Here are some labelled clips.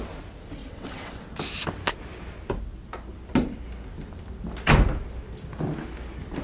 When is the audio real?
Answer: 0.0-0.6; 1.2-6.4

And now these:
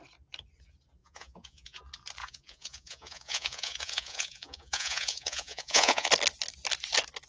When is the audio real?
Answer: 0.0-1.0; 1.8-2.2; 6.1-7.3

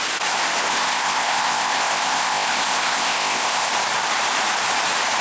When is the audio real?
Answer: 0.0-0.6; 3.7-5.2

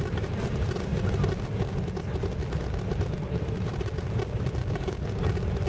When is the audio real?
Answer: 0.0-4.6; 5.2-5.7

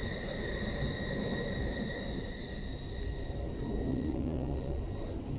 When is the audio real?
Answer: 0.0-3.9; 4.8-5.4